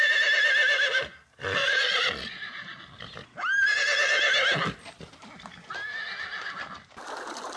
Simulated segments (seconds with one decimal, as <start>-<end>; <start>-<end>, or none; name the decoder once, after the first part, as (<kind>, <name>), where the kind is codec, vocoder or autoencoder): 1.6-2.8 (vocoder, Vocos)